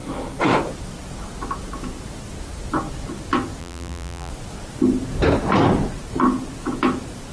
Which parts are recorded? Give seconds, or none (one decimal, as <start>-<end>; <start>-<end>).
0.0-3.6; 4.3-7.3